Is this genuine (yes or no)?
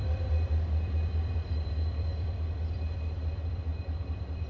no